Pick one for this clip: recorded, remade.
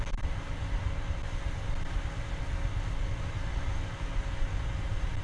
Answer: recorded